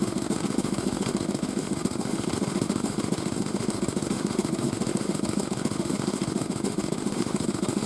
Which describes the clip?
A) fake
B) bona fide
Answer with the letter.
A